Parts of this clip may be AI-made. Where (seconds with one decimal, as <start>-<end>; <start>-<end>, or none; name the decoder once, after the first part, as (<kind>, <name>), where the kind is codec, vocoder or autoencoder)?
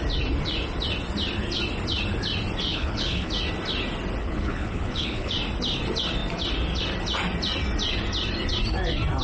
2.7-3.3 (codec, HILCodec); 4.2-5.3